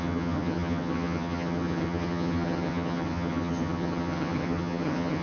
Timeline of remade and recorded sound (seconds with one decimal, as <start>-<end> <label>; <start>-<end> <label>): 0.0-5.2 remade